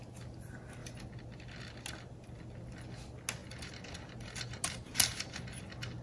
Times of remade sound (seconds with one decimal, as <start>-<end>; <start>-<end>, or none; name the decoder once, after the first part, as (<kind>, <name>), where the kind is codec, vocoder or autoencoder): 3.4-5.6 (vocoder, BigVGAN v2)